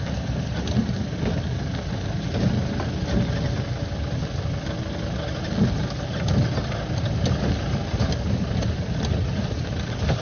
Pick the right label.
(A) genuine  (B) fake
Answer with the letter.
A